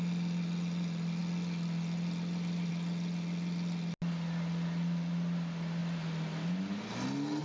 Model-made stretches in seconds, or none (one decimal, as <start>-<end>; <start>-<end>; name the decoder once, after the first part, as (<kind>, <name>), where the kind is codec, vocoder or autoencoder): none